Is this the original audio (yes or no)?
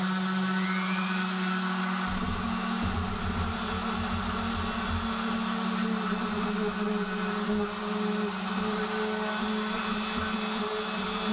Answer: yes